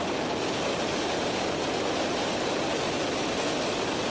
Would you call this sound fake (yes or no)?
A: no